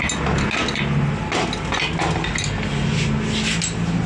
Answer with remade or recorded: recorded